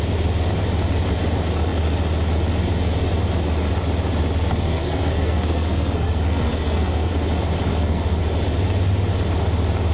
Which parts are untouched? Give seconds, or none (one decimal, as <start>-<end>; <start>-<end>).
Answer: 0.0-4.5; 7.1-7.7; 8.2-9.9